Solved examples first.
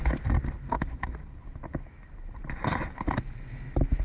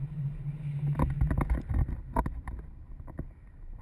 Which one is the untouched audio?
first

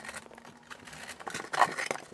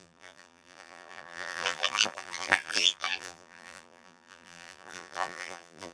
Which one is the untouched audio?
first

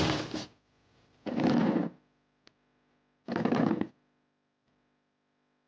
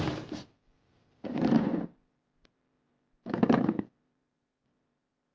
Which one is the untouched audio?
first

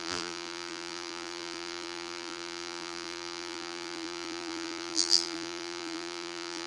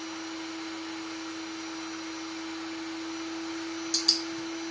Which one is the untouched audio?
second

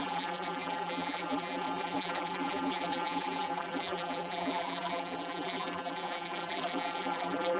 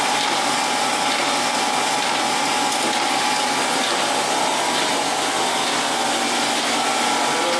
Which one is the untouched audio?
second